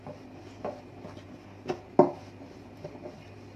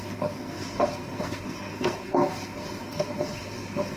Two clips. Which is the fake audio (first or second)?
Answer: second